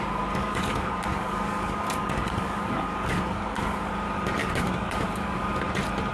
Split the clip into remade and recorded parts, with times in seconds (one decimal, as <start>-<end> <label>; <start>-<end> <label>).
0.0-0.4 recorded; 0.4-3.9 remade; 3.9-4.4 recorded; 4.4-5.5 remade; 5.5-6.1 recorded